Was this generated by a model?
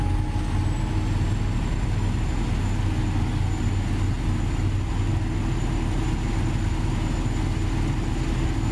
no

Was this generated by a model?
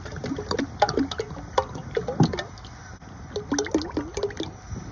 no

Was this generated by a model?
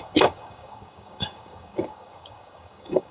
yes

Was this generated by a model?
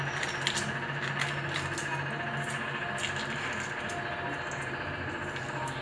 no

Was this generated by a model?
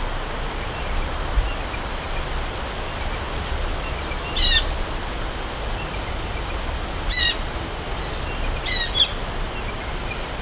no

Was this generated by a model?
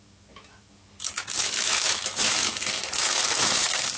yes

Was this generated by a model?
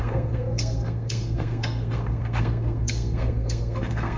yes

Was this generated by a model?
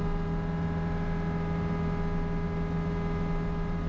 no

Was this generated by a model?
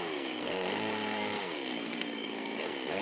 yes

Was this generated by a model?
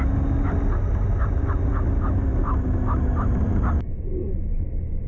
no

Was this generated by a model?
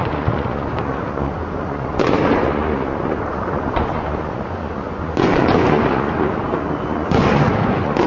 yes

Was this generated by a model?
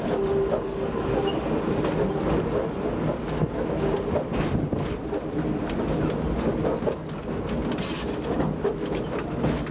no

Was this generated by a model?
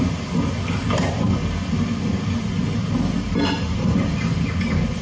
no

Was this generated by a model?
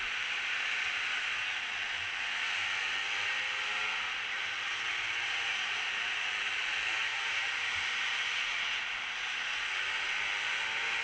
no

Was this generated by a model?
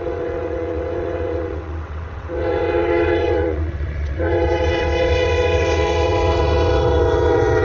yes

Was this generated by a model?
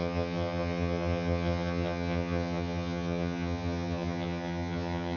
yes